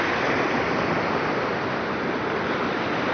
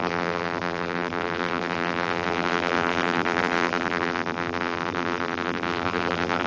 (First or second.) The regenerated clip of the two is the second